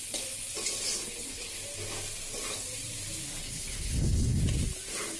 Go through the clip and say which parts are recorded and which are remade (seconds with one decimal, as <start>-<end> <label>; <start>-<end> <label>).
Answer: 0.0-1.0 recorded; 1.0-1.6 remade; 1.6-3.4 recorded; 3.4-4.4 remade; 4.4-5.2 recorded